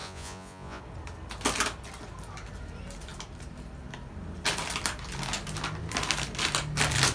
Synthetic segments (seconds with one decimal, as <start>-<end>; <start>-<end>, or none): 0.0-0.8